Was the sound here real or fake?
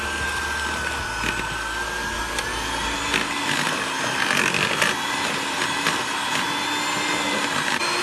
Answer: real